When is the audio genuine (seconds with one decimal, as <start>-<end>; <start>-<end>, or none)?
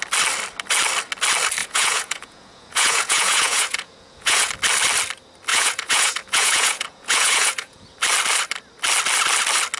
0.0-1.6; 4.5-5.5; 8.0-9.8